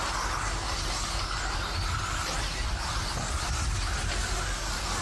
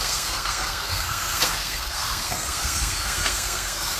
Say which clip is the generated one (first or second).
second